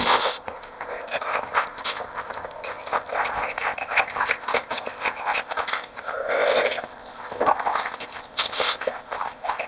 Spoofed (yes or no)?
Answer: yes